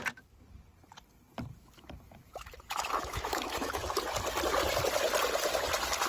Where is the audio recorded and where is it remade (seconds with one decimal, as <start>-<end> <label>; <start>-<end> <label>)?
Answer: 0.0-1.5 recorded; 1.5-4.0 remade; 4.0-6.1 recorded